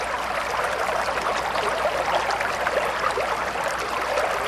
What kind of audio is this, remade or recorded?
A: recorded